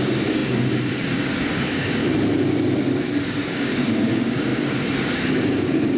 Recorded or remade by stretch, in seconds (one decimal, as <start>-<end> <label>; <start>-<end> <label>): 0.0-2.0 remade; 2.0-3.2 recorded; 3.2-6.0 remade